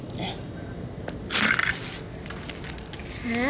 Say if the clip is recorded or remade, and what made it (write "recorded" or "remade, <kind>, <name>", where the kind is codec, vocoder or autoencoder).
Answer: recorded